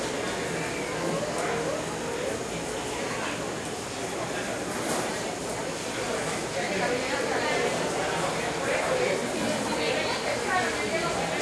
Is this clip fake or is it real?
real